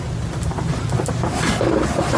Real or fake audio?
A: real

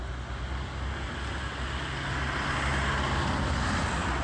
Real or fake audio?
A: real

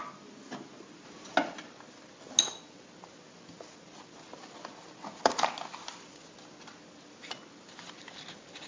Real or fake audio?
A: real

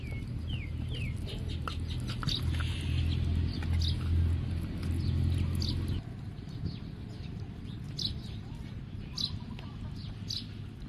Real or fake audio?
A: real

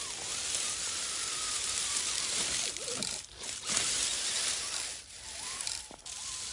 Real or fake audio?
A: fake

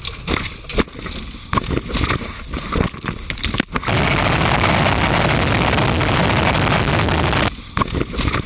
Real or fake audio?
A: real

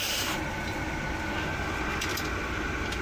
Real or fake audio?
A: real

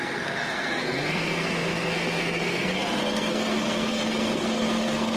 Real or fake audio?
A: fake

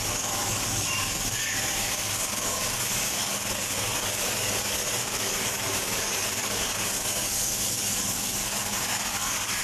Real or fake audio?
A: fake